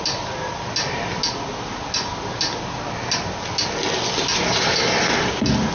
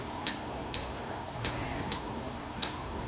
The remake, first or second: second